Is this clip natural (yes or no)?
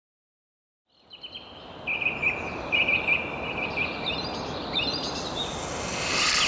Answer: yes